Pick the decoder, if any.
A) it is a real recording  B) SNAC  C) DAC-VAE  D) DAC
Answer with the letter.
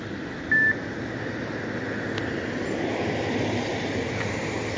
A